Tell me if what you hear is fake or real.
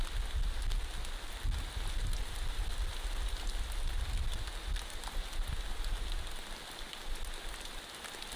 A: real